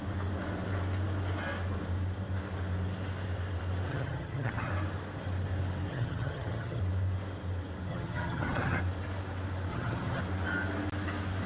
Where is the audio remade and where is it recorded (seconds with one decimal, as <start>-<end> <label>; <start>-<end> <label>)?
0.0-3.9 recorded; 3.9-4.7 remade; 4.7-5.9 recorded; 5.9-6.8 remade; 6.8-7.9 recorded; 7.9-8.8 remade; 8.8-9.7 recorded; 9.7-10.2 remade; 10.2-11.5 recorded

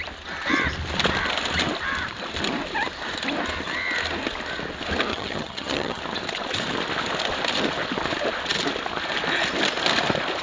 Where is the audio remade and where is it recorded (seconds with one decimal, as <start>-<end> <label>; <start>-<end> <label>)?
0.0-5.1 recorded; 5.1-6.0 remade; 6.0-10.4 recorded

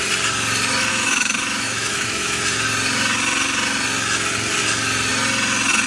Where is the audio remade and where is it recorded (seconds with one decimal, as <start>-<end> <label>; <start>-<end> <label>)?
0.0-0.9 recorded; 0.9-2.4 remade; 2.4-5.9 recorded

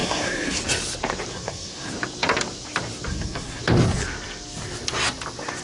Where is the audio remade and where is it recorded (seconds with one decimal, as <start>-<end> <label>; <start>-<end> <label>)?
0.0-0.6 remade; 0.6-1.3 recorded; 1.3-1.9 remade; 1.9-3.1 recorded; 3.1-3.6 remade; 3.6-5.6 recorded

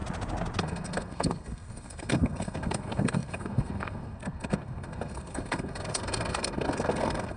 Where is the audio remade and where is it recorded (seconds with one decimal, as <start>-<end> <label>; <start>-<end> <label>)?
0.0-0.6 recorded; 0.6-7.4 remade

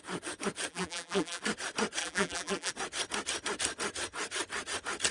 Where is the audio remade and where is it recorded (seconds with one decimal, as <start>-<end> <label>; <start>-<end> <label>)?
0.0-0.7 recorded; 0.7-1.4 remade; 1.4-2.0 recorded; 2.0-2.7 remade; 2.7-5.1 recorded

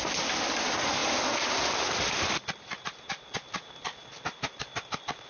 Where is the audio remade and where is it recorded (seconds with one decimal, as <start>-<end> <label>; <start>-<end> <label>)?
0.0-5.3 remade

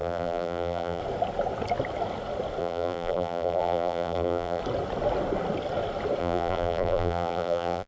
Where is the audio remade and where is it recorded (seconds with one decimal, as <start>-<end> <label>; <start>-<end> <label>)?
0.0-1.0 remade; 1.0-2.6 recorded; 2.6-4.6 remade; 4.6-6.2 recorded; 6.2-7.9 remade